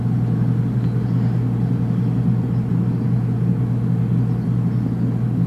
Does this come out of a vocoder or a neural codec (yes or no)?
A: no